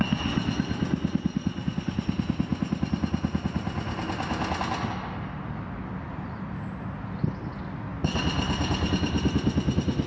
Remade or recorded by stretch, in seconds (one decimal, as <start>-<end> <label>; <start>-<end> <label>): 0.0-10.1 recorded